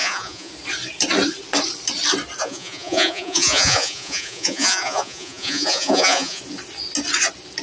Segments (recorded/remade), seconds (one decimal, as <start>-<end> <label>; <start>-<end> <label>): 0.0-0.5 remade; 0.5-2.4 recorded; 2.4-6.4 remade; 6.4-7.6 recorded